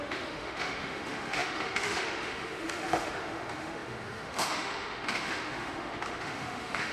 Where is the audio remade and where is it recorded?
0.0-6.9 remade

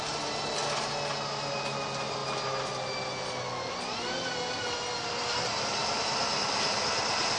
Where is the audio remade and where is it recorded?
0.0-7.4 recorded

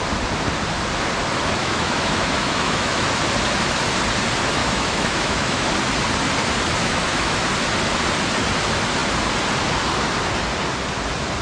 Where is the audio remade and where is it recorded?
0.0-1.6 recorded; 1.6-3.1 remade; 3.1-4.6 recorded; 4.6-5.7 remade; 5.7-6.8 recorded; 6.8-7.4 remade; 7.4-11.4 recorded

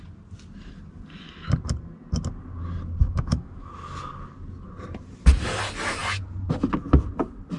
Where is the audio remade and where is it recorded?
0.0-3.0 recorded; 3.0-3.7 remade; 3.7-7.6 recorded

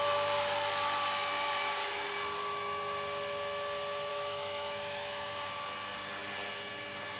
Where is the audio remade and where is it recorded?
0.0-4.1 recorded; 4.1-5.5 remade; 5.5-7.2 recorded

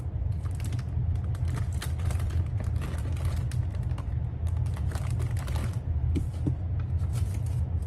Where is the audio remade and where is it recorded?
0.0-5.6 recorded; 5.6-6.2 remade; 6.2-7.9 recorded